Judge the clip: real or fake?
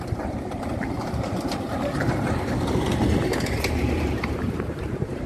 fake